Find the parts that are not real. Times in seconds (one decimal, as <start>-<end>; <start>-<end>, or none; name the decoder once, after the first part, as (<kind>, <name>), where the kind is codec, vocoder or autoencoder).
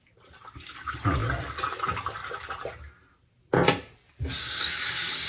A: 4.4-5.3 (codec, DAC)